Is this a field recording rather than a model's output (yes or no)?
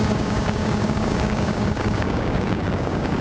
no